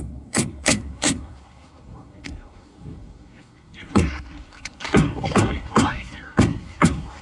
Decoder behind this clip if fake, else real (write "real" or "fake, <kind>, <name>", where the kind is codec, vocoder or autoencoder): fake, codec, SNAC